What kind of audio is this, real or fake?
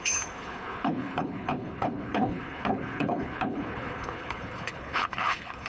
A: fake